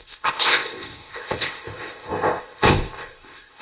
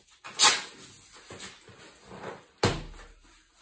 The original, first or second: second